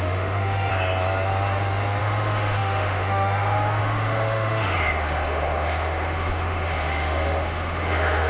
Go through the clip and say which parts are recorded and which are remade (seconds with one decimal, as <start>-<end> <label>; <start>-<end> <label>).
0.0-0.7 remade; 0.7-2.0 recorded; 2.0-8.3 remade

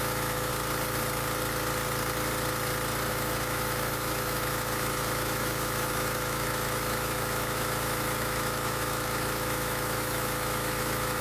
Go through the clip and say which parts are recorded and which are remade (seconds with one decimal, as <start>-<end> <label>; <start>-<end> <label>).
0.0-0.5 remade; 0.5-3.1 recorded; 3.1-11.2 remade